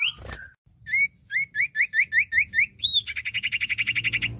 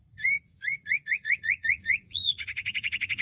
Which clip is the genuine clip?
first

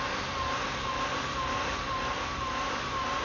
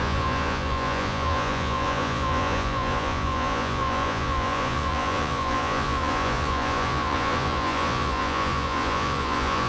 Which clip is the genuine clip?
first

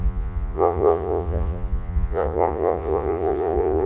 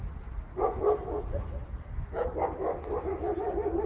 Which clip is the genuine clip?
second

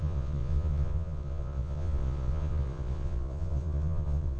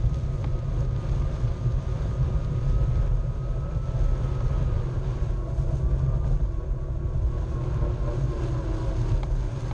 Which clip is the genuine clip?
second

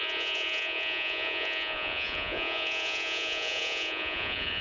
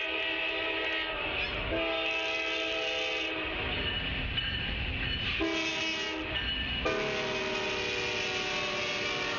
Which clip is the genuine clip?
second